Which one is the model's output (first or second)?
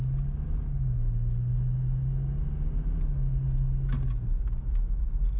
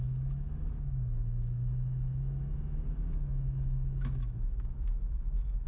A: second